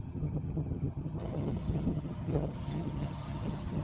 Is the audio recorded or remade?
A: remade